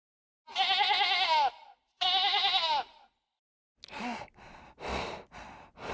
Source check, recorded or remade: recorded